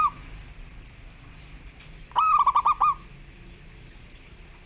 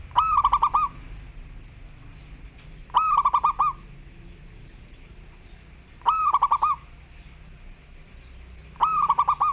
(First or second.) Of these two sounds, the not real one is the first